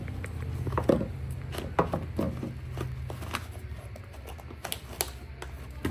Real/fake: real